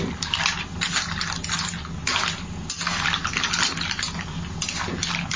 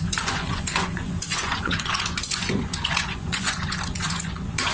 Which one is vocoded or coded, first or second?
second